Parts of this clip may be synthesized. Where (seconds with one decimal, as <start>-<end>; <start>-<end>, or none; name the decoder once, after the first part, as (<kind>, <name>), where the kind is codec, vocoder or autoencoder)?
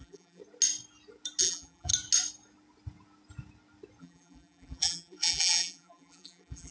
0.0-0.4 (vocoder, BigVGAN v2); 1.4-1.9; 4.0-6.7